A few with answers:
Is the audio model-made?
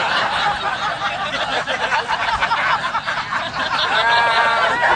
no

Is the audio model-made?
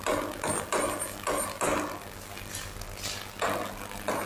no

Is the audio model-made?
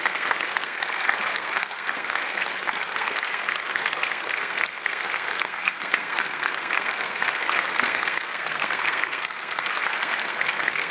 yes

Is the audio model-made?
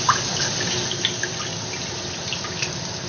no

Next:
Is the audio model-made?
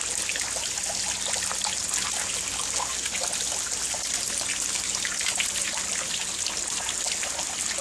no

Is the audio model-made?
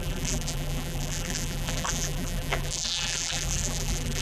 yes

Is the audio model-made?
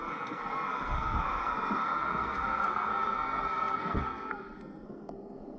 yes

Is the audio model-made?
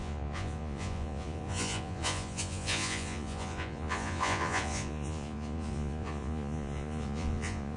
yes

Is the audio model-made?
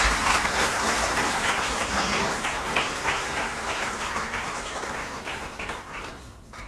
yes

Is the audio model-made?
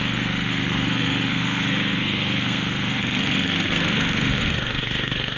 yes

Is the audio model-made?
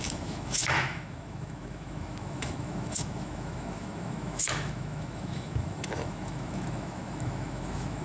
yes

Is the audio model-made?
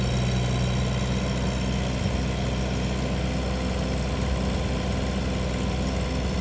no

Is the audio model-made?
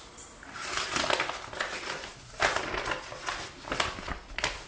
no